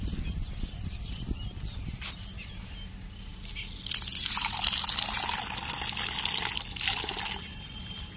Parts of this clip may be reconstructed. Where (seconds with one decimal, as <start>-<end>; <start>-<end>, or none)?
none